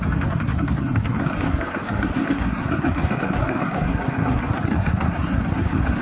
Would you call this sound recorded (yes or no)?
no